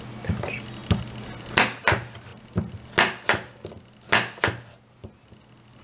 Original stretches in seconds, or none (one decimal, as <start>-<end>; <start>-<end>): 0.0-5.8